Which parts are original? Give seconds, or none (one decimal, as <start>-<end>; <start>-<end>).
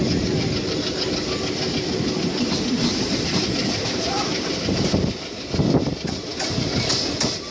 0.0-7.5